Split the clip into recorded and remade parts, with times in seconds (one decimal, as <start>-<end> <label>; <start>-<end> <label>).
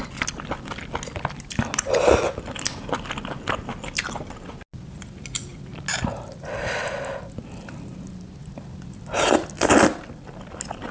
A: 0.0-10.9 recorded